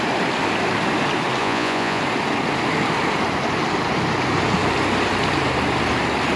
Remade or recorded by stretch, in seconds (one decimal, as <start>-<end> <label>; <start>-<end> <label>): 0.0-1.4 recorded; 1.4-2.0 remade; 2.0-6.4 recorded